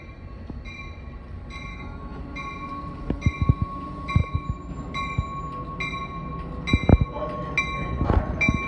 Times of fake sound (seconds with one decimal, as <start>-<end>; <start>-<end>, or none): 1.7-2.2